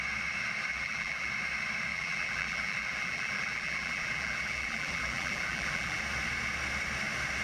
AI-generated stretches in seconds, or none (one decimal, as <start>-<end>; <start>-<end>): 0.7-1.3; 1.9-6.0